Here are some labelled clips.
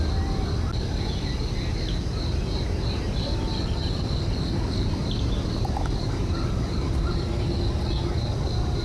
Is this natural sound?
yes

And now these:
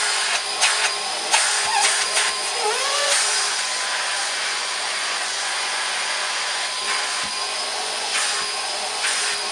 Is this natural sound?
no